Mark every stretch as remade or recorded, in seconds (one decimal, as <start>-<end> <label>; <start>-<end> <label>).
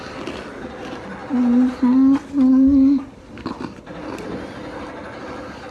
0.0-5.7 recorded